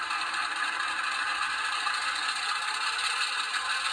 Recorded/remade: recorded